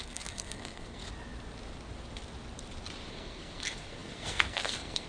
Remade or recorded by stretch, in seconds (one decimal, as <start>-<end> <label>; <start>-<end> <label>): 0.0-1.0 remade; 1.0-3.1 recorded; 3.1-5.1 remade